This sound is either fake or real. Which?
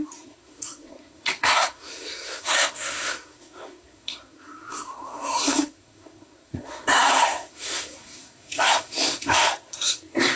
fake